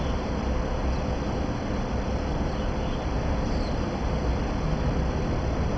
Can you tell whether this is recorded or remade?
recorded